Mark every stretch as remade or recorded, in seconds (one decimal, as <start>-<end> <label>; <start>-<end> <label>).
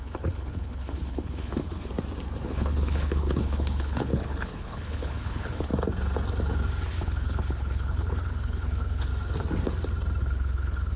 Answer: 0.0-1.9 remade; 1.9-2.4 recorded; 2.4-5.7 remade; 5.7-6.9 recorded; 6.9-9.1 remade; 9.1-10.2 recorded; 10.2-11.0 remade